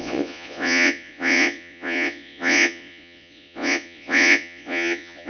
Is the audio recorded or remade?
remade